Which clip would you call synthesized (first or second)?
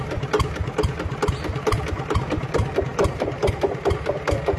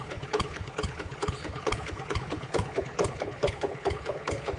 second